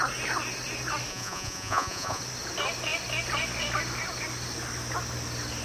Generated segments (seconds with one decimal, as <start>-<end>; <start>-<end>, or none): 1.1-2.2